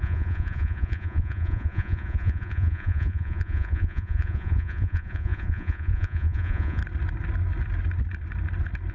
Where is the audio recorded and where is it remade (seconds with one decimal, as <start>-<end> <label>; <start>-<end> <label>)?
0.0-6.8 remade; 6.8-8.9 recorded